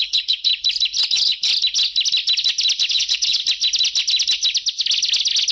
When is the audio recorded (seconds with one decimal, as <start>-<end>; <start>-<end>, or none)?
0.5-1.1; 1.5-2.9; 3.4-5.5